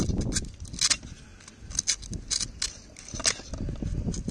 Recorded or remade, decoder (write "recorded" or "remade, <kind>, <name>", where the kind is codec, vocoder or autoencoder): recorded